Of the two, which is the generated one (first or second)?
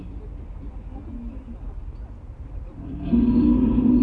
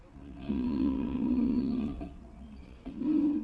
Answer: second